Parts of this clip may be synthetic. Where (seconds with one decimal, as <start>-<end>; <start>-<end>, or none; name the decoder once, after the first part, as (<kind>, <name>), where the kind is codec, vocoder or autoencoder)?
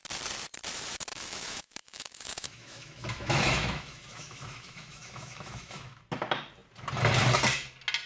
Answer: 1.1-6.0 (autoencoder, DAC-VAE)